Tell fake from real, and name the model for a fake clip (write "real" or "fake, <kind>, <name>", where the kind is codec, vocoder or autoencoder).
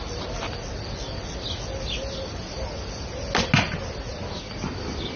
real